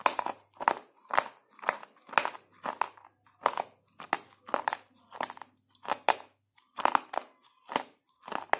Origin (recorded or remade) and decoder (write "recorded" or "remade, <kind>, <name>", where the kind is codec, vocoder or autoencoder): recorded